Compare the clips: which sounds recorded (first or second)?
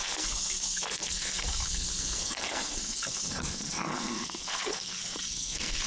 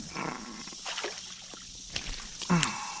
second